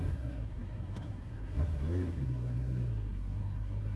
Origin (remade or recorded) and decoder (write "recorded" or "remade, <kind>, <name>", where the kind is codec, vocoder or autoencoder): remade, codec, SNAC